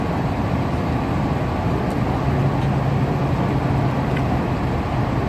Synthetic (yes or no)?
no